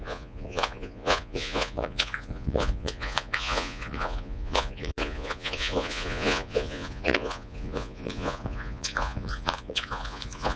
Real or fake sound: fake